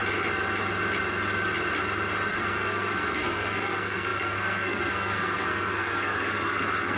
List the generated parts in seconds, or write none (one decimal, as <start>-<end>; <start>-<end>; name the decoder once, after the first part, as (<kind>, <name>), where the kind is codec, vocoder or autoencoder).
2.3-7.0 (codec, SNAC)